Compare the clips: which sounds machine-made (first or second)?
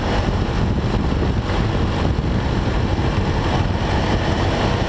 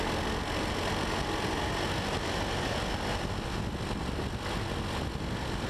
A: first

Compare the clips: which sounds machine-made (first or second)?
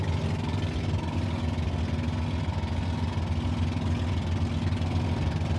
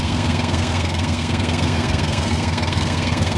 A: second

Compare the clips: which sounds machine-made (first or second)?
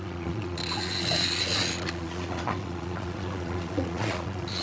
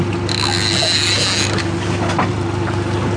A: first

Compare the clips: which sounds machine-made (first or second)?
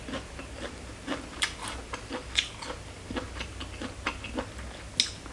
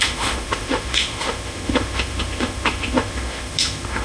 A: second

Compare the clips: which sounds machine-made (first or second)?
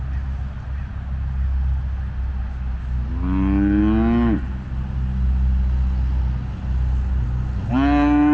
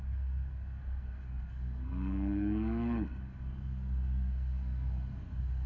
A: second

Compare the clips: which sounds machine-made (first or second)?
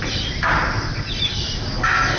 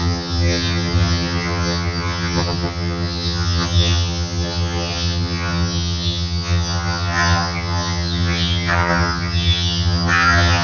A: second